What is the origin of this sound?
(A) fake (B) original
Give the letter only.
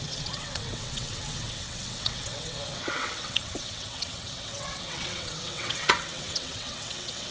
A